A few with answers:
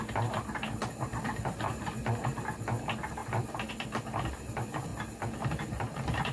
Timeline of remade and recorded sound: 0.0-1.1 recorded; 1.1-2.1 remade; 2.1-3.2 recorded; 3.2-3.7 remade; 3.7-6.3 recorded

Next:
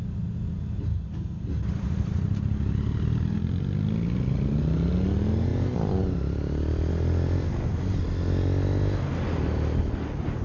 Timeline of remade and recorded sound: 0.0-5.5 recorded; 5.5-6.9 remade; 6.9-10.4 recorded

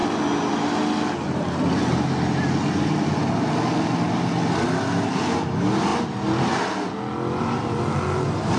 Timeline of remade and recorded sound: 0.0-8.6 recorded

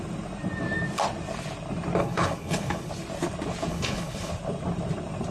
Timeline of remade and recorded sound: 0.0-2.0 recorded; 2.0-2.9 remade; 2.9-3.7 recorded; 3.7-4.3 remade; 4.3-5.3 recorded

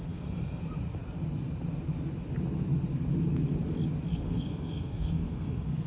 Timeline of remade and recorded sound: 0.0-0.6 remade; 0.6-4.1 recorded; 4.1-5.9 remade

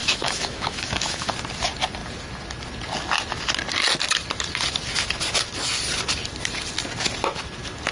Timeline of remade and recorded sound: 0.0-1.3 remade; 1.3-7.9 recorded

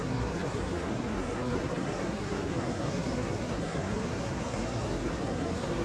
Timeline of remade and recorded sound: 0.0-5.8 remade

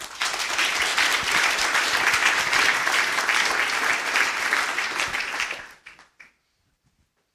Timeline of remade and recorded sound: 0.0-7.3 recorded